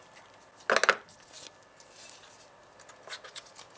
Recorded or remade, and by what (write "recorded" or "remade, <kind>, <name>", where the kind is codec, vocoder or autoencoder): recorded